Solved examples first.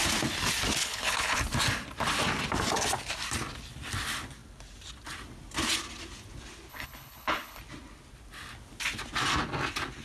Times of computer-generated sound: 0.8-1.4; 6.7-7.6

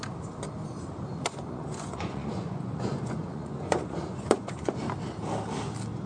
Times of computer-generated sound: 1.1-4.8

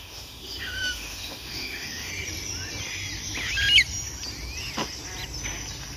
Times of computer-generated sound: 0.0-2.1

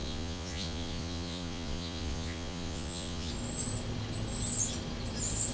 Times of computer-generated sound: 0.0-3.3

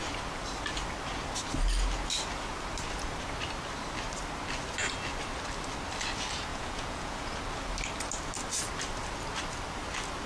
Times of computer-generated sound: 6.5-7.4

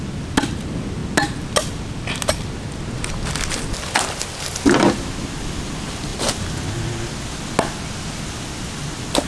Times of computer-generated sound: none

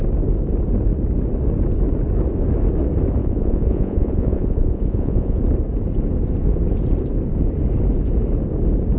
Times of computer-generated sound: 3.2-5.4